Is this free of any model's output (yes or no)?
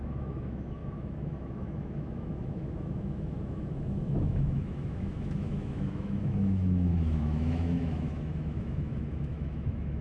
no